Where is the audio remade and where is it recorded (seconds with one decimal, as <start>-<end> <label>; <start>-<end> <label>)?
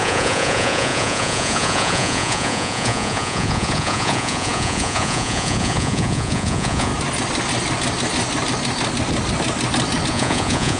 0.0-6.9 remade; 6.9-10.1 recorded; 10.1-10.8 remade